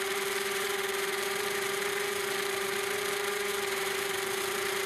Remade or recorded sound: remade